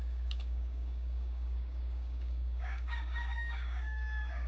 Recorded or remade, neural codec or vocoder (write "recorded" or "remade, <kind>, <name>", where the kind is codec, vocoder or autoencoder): remade, codec, DAC